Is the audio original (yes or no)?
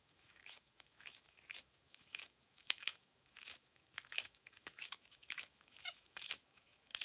no